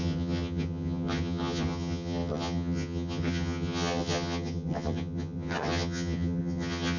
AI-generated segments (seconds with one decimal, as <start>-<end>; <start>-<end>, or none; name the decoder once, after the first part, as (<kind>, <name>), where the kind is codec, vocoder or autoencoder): 0.0-7.0 (vocoder, HiFi-GAN)